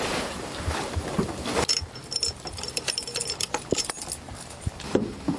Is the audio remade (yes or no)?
no